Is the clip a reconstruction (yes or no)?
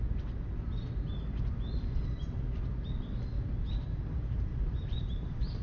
no